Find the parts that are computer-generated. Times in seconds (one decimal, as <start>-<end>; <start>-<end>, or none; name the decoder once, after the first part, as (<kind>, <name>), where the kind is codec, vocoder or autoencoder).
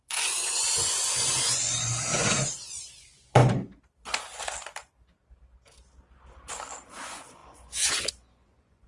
0.0-3.4 (vocoder, Vocos); 6.9-8.9